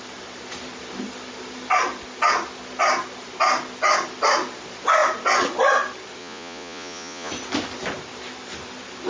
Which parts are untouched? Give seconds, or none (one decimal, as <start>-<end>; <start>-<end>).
0.0-6.2; 7.3-9.1